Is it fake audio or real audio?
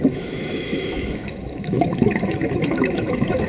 fake